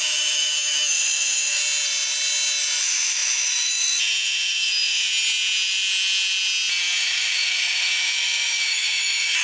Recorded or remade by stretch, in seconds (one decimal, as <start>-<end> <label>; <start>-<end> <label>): 0.0-1.6 remade; 1.6-2.8 recorded; 2.8-5.1 remade; 5.1-7.0 recorded; 7.0-9.4 remade